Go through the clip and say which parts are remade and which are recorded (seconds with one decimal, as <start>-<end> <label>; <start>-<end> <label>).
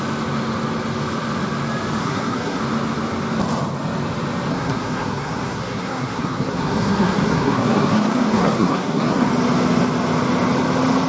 0.0-2.0 recorded; 2.0-2.6 remade; 2.6-4.5 recorded; 4.5-9.3 remade; 9.3-11.1 recorded